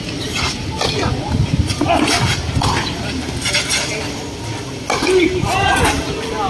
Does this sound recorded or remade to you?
recorded